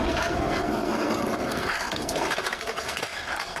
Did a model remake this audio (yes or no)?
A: yes